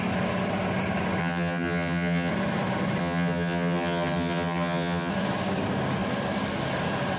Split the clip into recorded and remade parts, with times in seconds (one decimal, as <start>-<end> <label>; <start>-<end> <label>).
0.0-1.2 recorded; 1.2-2.3 remade; 2.3-3.0 recorded; 3.0-5.1 remade; 5.1-7.2 recorded